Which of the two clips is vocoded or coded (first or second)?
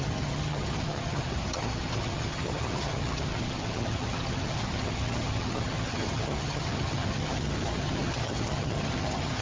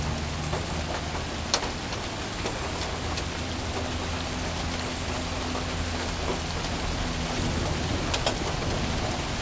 first